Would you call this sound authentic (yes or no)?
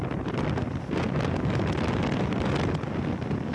yes